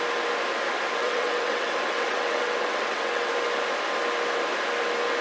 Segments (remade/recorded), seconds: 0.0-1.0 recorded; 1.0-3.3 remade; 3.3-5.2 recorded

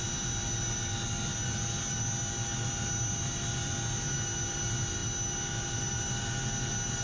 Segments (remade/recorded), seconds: 0.0-7.0 recorded

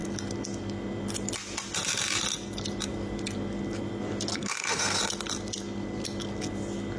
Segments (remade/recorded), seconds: 0.0-4.3 recorded; 4.3-5.0 remade; 5.0-7.0 recorded

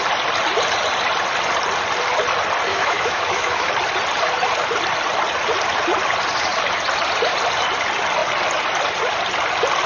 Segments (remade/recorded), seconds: 0.0-2.7 recorded; 2.7-3.7 remade; 3.7-9.9 recorded

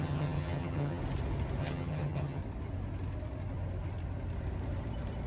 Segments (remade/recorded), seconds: 0.0-1.0 remade; 1.0-1.6 recorded; 1.6-2.4 remade; 2.4-5.3 recorded

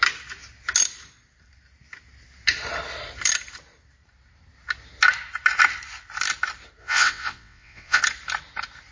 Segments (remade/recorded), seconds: 0.0-6.8 recorded; 6.8-8.0 remade; 8.0-8.9 recorded